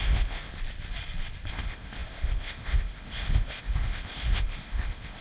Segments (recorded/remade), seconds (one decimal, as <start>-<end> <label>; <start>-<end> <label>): 0.0-0.5 remade; 0.5-1.5 recorded; 1.5-5.2 remade